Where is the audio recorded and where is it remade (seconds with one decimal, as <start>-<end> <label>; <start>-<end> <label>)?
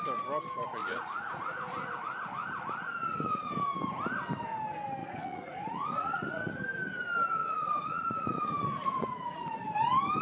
0.0-0.8 recorded; 0.8-2.0 remade; 2.0-2.4 recorded; 2.4-3.5 remade; 3.5-5.0 recorded; 5.0-6.6 remade; 6.6-7.4 recorded; 7.4-9.7 remade; 9.7-10.2 recorded